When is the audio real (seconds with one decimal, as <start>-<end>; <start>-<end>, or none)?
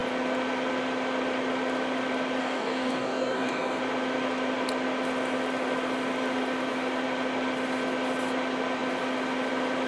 0.0-2.4; 3.8-9.9